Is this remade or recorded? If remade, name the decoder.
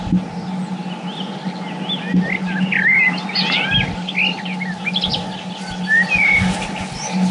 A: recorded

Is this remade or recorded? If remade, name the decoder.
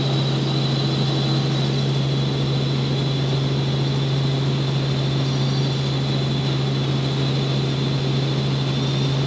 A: recorded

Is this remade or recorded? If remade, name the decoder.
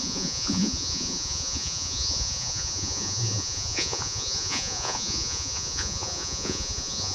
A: remade, vocoder, Vocos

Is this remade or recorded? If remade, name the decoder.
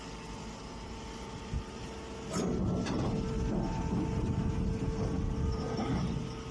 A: recorded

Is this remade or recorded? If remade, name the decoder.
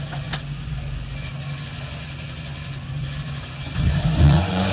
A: remade, vocoder, Vocos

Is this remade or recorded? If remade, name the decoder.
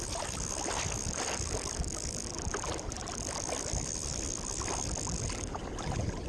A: recorded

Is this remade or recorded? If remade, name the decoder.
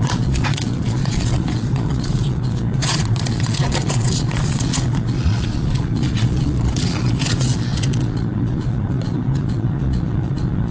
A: remade, vocoder, Vocos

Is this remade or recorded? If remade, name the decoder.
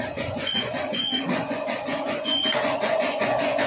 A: remade, vocoder, Vocos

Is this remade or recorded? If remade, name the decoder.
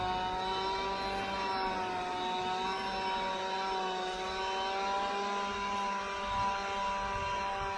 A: recorded